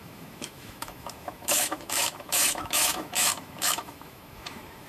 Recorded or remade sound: remade